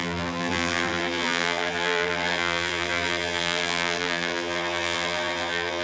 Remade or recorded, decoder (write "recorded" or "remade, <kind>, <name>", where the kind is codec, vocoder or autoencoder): remade, vocoder, BigVGAN v2